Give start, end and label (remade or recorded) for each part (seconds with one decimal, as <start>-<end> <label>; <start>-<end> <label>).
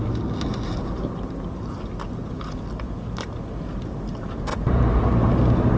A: 0.0-4.5 recorded; 4.5-5.8 remade